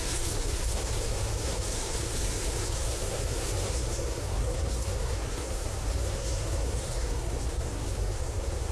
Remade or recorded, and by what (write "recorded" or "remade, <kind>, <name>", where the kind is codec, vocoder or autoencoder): remade, codec, SNAC